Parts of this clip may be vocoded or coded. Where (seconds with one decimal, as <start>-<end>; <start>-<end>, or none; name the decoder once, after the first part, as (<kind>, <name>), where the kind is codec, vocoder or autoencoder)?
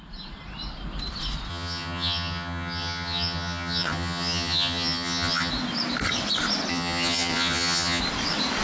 1.5-5.5 (vocoder, HiFi-GAN); 6.7-8.0